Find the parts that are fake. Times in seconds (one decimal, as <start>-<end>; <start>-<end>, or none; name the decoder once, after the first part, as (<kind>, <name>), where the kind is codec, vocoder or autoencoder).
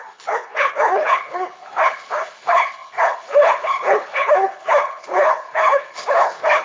0.0-6.6 (codec, HILCodec)